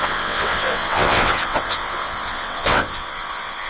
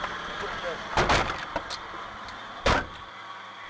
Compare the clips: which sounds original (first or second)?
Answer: second